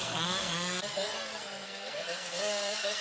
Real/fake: fake